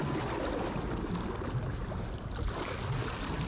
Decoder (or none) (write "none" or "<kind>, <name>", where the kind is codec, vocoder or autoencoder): none